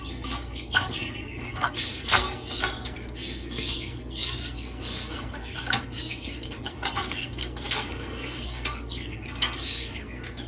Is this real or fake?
fake